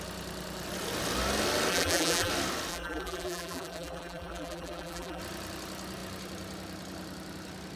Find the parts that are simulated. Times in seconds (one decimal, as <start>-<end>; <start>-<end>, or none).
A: 1.7-2.3; 2.7-5.2